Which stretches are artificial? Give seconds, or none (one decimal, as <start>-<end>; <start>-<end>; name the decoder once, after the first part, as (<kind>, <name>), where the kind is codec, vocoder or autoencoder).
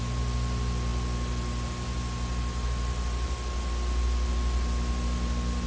none